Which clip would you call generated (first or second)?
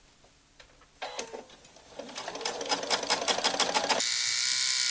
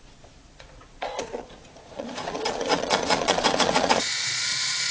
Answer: second